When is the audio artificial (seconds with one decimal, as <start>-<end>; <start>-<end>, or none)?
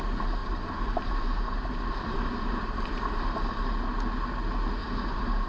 0.4-3.7; 4.8-5.5